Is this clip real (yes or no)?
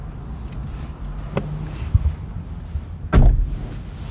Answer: yes